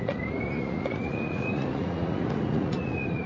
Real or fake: fake